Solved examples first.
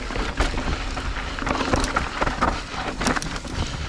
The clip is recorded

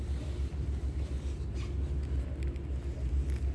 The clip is recorded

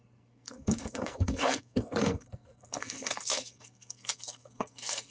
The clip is remade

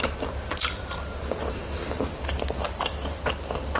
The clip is recorded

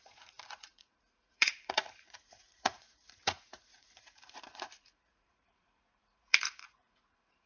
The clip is remade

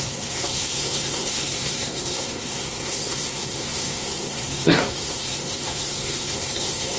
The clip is remade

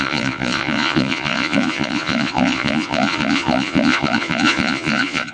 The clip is remade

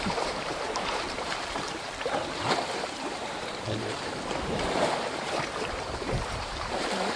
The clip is remade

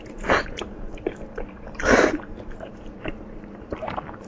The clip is remade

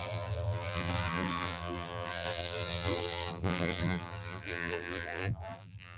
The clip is remade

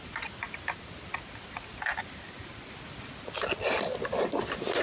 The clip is recorded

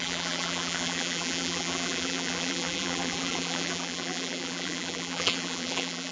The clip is remade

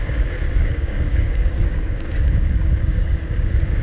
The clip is remade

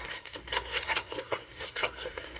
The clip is remade